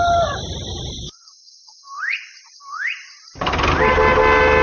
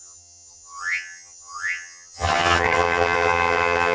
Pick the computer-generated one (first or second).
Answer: second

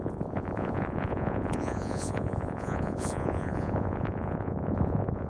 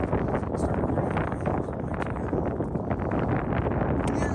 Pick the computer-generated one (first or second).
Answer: first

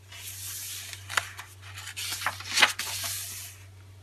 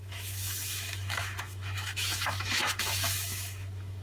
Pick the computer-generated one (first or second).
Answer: second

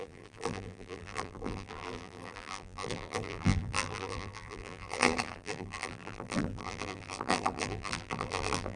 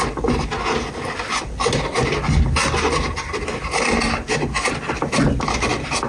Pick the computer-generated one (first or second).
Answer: first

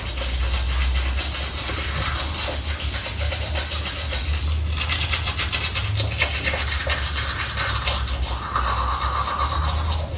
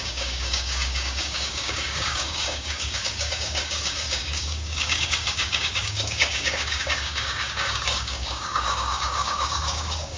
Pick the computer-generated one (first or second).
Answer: second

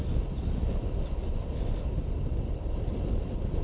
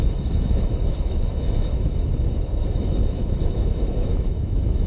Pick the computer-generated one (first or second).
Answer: second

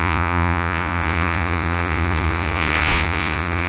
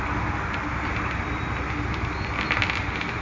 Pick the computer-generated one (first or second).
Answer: first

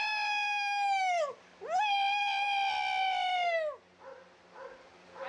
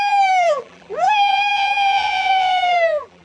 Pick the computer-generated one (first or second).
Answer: second